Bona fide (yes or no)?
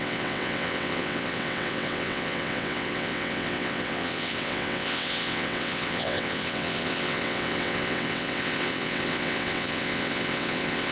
no